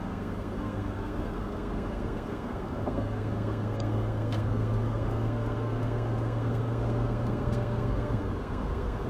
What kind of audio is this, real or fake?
fake